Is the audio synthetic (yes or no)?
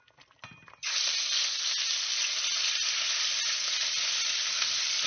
no